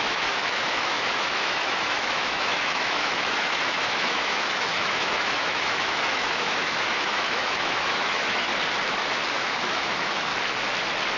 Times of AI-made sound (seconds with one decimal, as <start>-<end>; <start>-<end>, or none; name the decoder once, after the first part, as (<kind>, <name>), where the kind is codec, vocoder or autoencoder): 0.0-8.5 (autoencoder, DAC-VAE); 9.4-10.3